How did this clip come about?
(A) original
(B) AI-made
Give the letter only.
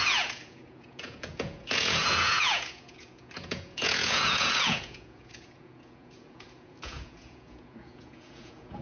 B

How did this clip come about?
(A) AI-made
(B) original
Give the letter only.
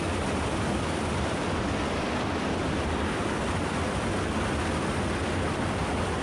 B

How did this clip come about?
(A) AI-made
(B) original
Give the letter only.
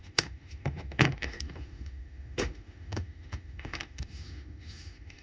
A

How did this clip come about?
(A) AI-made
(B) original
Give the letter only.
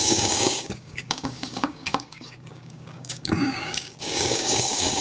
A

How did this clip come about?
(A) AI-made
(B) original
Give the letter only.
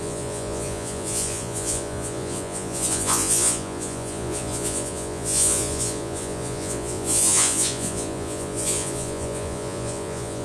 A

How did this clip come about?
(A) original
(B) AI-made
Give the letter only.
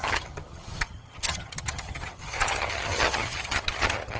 B